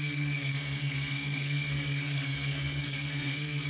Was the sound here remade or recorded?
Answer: remade